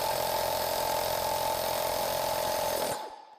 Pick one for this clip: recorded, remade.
recorded